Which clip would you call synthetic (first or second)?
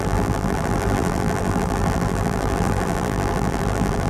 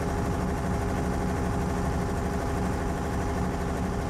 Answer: first